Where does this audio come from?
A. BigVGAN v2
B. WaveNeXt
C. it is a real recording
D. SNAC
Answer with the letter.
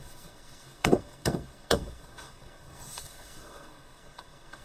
D